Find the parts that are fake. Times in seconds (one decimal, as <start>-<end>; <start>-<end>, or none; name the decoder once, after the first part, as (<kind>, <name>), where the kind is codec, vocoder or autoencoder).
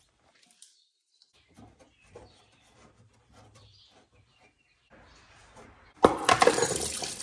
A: 0.0-5.4 (vocoder, BigVGAN v2); 6.3-7.2